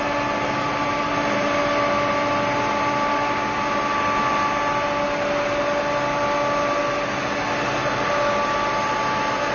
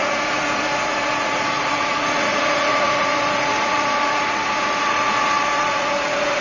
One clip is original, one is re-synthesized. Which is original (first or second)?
first